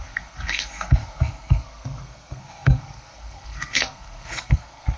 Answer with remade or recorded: remade